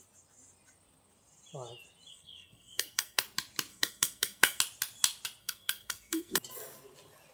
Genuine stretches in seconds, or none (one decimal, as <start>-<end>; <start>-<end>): 0.0-2.1; 3.2-3.7; 4.6-5.4; 6.4-7.3